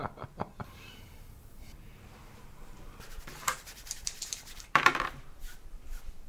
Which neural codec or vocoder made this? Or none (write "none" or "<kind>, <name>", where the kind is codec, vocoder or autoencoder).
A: vocoder, BigVGAN v2